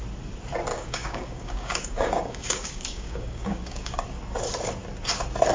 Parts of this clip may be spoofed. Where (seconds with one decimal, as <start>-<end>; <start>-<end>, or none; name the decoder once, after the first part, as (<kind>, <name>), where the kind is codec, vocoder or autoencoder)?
0.7-4.0 (codec, DAC)